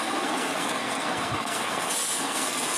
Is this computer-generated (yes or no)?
yes